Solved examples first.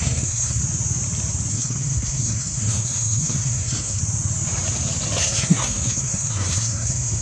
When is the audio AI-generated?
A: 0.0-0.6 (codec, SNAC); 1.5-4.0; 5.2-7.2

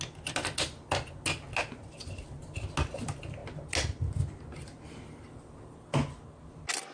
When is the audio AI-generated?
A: none

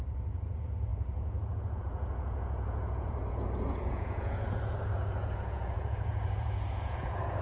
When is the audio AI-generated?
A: 0.0-7.4 (vocoder, Vocos)

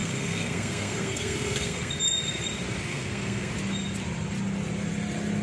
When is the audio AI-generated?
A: 0.0-1.9 (codec, SNAC); 2.9-3.5

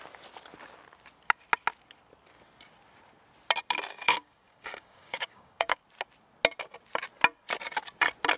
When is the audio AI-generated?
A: 3.9-5.8 (codec, DAC)

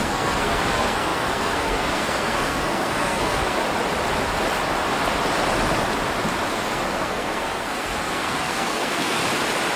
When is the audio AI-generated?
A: 0.0-3.6 (codec, SNAC); 6.5-9.2